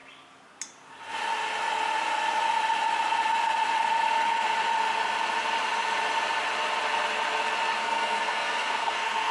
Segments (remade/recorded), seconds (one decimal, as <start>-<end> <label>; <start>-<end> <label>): 0.0-7.8 recorded; 7.8-9.3 remade

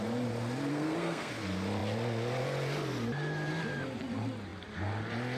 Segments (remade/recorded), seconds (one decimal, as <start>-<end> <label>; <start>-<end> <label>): 0.0-0.7 recorded; 0.7-1.3 remade; 1.3-5.4 recorded

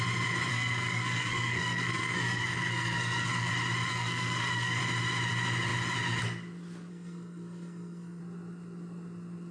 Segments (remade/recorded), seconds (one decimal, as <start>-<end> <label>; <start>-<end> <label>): 0.0-0.5 recorded; 0.5-3.5 remade; 3.5-3.9 recorded; 3.9-4.8 remade; 4.8-6.9 recorded; 6.9-8.2 remade; 8.2-9.5 recorded

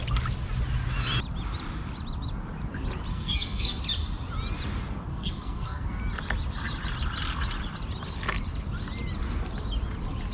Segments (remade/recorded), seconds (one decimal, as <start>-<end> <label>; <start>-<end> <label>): 0.0-3.1 recorded; 3.1-3.8 remade; 3.8-5.1 recorded; 5.1-6.0 remade; 6.0-10.3 recorded

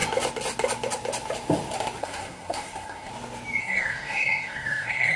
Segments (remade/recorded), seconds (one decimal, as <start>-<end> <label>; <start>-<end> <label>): 0.0-2.0 recorded; 2.0-3.1 remade; 3.1-3.6 recorded; 3.6-5.2 remade

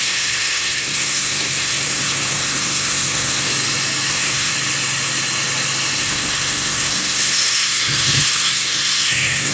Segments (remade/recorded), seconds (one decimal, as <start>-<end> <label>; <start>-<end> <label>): 0.0-3.5 remade; 3.5-4.1 recorded; 4.1-4.5 remade; 4.5-6.0 recorded; 6.0-9.5 remade

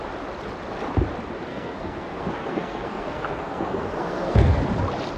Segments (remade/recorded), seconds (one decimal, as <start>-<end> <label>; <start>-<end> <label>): 0.0-1.5 recorded; 1.5-4.6 remade; 4.6-5.2 recorded